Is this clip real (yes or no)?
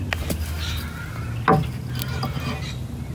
yes